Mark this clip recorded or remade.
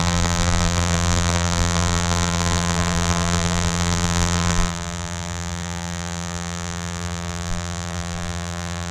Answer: remade